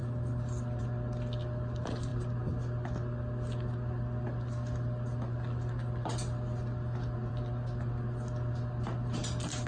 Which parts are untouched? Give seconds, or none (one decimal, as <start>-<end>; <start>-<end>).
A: 0.0-9.7